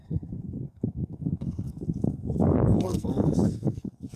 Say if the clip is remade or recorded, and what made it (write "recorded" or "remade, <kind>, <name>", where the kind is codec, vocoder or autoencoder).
remade, codec, SNAC